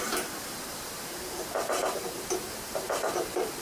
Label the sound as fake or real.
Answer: fake